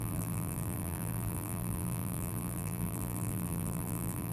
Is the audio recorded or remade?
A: remade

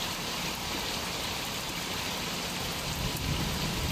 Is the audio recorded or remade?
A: remade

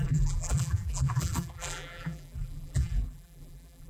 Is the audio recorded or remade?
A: remade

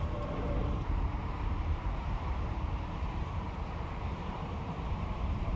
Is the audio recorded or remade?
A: remade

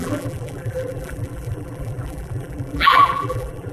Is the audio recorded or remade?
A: remade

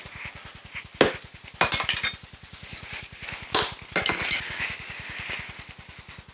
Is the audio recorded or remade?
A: recorded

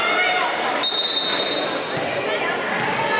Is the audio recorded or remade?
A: recorded